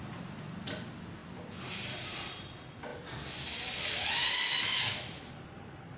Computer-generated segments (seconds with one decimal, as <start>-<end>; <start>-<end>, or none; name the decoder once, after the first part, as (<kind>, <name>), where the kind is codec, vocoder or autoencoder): 1.2-2.5 (vocoder, BigVGAN v2); 2.9-3.6